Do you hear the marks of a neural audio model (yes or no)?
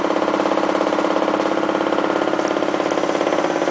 no